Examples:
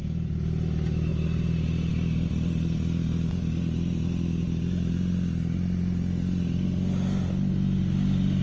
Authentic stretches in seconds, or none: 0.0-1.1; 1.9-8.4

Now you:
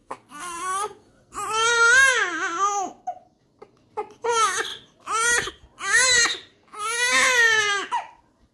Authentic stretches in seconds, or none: 1.3-8.5

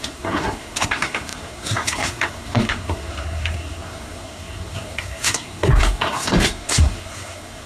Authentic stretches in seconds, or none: none

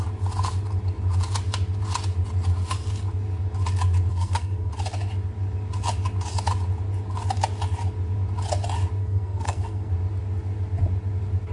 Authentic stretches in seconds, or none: 0.0-4.1; 4.7-9.0; 9.9-11.5

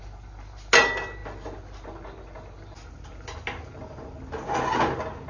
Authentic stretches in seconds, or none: 0.0-5.3

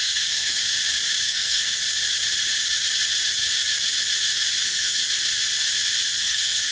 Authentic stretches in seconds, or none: 0.6-1.2; 1.8-4.6; 5.0-6.2

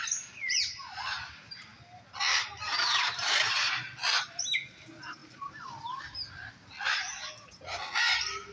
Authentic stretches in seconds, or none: 0.0-8.5